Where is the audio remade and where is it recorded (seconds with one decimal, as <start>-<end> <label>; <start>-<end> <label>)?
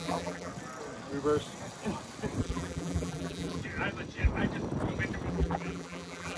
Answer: 0.0-0.5 remade; 0.5-2.4 recorded; 2.4-3.6 remade; 3.6-5.3 recorded; 5.3-6.4 remade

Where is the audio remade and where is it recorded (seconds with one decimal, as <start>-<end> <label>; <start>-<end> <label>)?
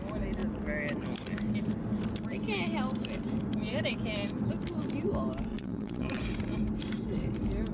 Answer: 0.0-5.5 recorded; 5.5-6.2 remade; 6.2-7.7 recorded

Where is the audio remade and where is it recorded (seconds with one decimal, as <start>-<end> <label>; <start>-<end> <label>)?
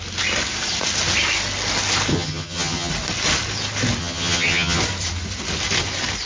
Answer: 0.0-2.1 recorded; 2.1-2.9 remade; 2.9-4.0 recorded; 4.0-4.8 remade; 4.8-6.3 recorded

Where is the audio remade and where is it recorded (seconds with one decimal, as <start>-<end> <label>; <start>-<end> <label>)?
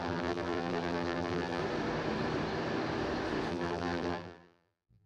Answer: 0.0-1.6 remade; 1.6-3.5 recorded; 3.5-5.1 remade